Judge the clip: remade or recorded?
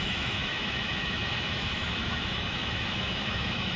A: remade